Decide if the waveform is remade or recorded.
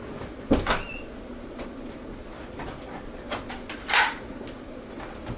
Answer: recorded